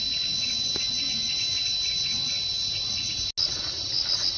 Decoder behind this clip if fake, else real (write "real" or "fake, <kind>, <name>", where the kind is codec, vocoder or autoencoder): real